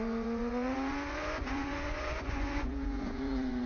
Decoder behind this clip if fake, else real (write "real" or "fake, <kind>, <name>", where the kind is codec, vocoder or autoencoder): fake, vocoder, Vocos